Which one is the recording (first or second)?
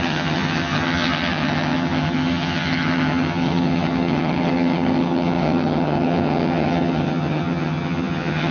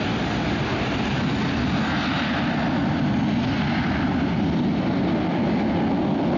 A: second